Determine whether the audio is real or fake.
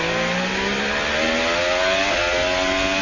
real